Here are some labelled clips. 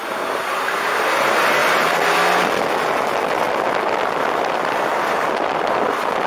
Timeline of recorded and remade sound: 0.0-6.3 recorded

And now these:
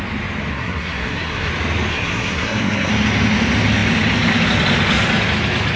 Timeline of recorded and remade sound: 0.0-0.5 recorded; 0.5-1.5 remade; 1.5-1.9 recorded; 1.9-2.9 remade; 2.9-5.8 recorded

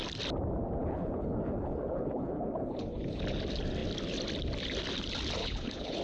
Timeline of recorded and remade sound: 0.0-0.8 recorded; 0.8-3.2 remade; 3.2-5.4 recorded; 5.4-6.0 remade

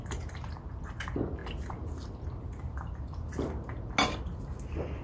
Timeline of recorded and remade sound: 0.0-5.0 recorded

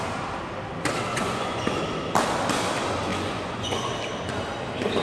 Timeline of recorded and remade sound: 0.0-1.1 recorded; 1.1-1.8 remade; 1.8-3.1 recorded; 3.1-3.9 remade; 3.9-5.0 recorded

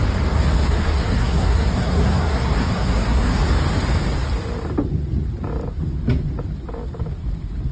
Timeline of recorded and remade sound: 0.0-0.6 recorded; 0.6-3.4 remade; 3.4-7.7 recorded